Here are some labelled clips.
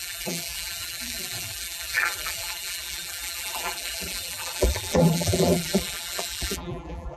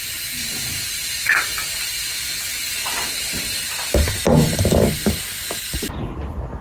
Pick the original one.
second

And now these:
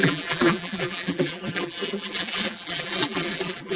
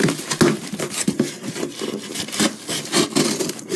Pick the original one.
second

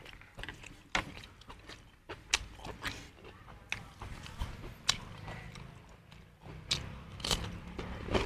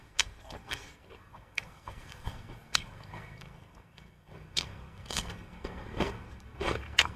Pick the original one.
first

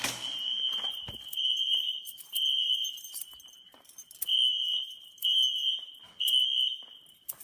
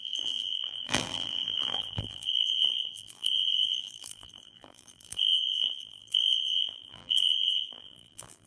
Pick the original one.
first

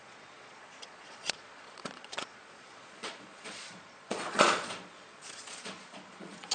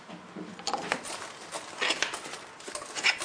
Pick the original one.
second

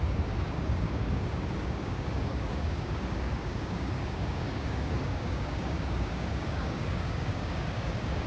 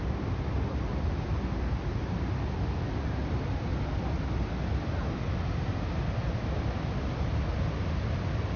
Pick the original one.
second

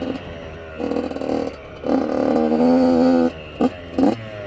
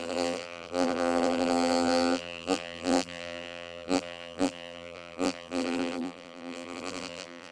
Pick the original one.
first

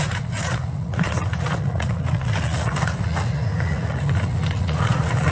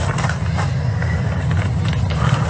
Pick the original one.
second